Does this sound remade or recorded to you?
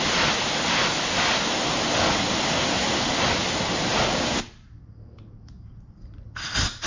recorded